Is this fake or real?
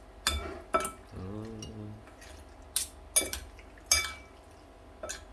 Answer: real